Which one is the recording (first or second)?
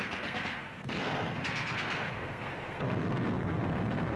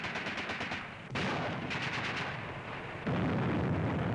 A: second